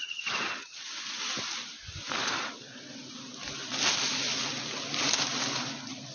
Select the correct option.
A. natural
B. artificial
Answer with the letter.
A